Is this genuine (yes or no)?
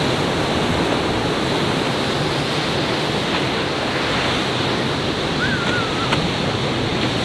yes